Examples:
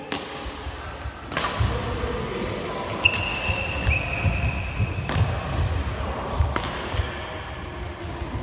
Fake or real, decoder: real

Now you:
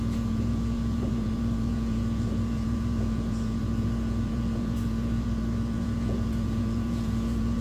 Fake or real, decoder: fake, vocoder, Vocos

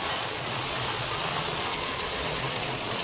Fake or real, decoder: fake, vocoder, Vocos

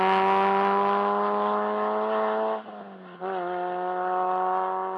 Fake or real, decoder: real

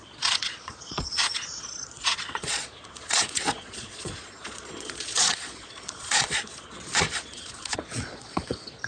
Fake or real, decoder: fake, vocoder, Vocos